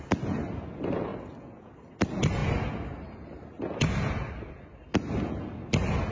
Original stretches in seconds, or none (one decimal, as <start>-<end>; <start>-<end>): 0.0-6.1